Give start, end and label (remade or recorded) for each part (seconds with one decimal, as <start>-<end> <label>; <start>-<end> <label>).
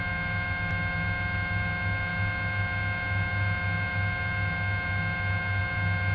0.0-6.1 recorded